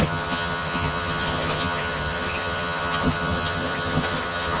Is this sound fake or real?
fake